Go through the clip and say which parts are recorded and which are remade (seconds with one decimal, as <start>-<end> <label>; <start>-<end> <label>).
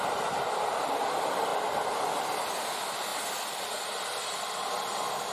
0.0-5.3 recorded